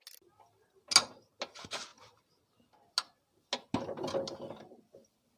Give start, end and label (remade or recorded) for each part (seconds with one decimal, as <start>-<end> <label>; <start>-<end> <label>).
0.0-5.4 recorded